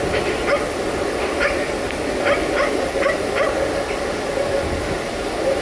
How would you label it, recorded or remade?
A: recorded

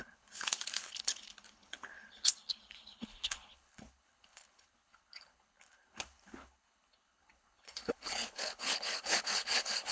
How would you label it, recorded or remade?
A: remade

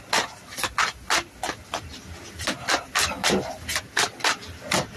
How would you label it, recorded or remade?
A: recorded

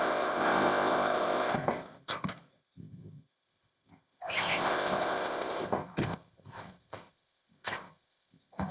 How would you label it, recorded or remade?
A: remade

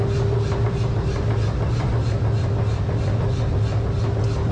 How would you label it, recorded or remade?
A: recorded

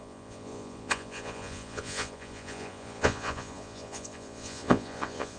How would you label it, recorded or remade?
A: remade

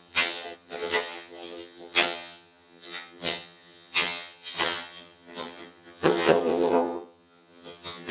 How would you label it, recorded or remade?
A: remade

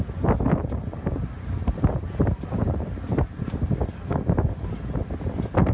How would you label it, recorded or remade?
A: recorded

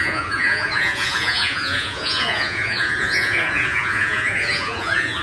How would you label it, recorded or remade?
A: remade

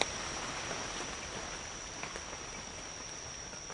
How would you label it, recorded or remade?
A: recorded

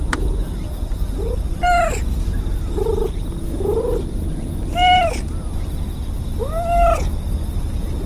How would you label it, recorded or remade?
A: recorded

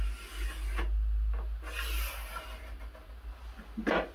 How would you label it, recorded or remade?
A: recorded